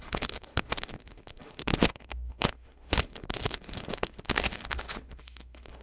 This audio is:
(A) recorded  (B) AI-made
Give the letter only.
B